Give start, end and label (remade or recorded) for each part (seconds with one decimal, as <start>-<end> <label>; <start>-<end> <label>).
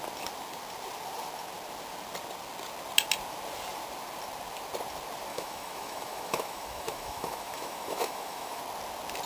0.0-5.3 recorded; 5.3-8.6 remade; 8.6-9.3 recorded